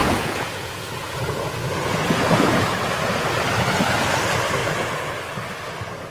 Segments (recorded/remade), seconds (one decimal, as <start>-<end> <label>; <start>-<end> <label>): 0.0-3.3 remade; 3.3-4.6 recorded; 4.6-5.1 remade; 5.1-6.1 recorded

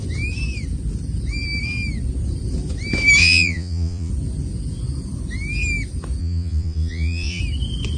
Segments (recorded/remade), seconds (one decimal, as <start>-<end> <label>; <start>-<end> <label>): 0.0-3.2 recorded; 3.2-4.1 remade; 4.1-6.2 recorded; 6.2-7.4 remade; 7.4-8.0 recorded